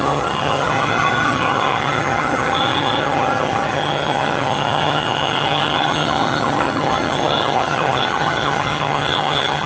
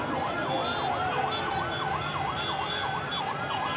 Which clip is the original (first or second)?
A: second